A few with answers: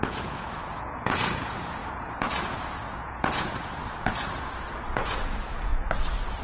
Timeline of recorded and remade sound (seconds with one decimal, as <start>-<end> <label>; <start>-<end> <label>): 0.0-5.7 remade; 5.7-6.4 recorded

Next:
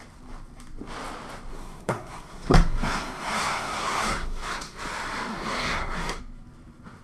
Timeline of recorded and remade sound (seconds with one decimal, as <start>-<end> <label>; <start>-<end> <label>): 0.0-1.5 recorded; 1.5-4.8 remade; 4.8-5.3 recorded; 5.3-6.2 remade; 6.2-7.0 recorded

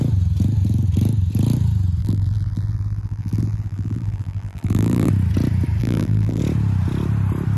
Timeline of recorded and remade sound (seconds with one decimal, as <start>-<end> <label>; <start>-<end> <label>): 0.0-2.0 recorded; 2.0-5.1 remade; 5.1-5.8 recorded; 5.8-6.4 remade; 6.4-7.6 recorded

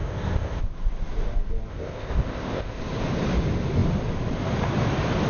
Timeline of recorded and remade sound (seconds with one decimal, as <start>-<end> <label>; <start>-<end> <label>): 0.0-0.6 remade; 0.6-1.7 recorded; 1.7-2.8 remade; 2.8-5.3 recorded

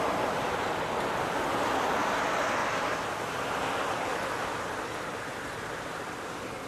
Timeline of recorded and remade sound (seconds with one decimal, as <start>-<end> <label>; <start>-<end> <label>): 0.0-6.7 recorded

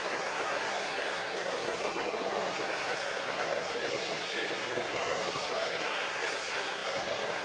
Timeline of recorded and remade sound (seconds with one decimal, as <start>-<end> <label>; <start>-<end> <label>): 0.0-7.4 remade

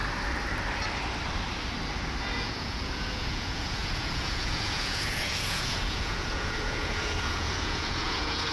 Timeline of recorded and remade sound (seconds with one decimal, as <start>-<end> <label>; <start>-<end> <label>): 0.0-2.2 recorded; 2.2-8.5 remade

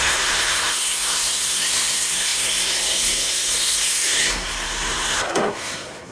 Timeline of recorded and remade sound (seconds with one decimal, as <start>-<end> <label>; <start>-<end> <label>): 0.0-6.1 remade